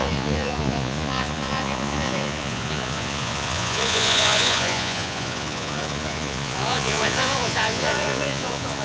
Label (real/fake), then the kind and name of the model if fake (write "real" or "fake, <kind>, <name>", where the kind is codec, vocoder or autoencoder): fake, vocoder, Vocos